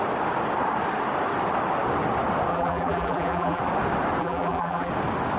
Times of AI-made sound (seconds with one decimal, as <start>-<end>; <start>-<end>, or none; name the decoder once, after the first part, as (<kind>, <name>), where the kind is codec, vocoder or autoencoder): 2.5-3.6 (vocoder, BigVGAN v2); 4.2-4.9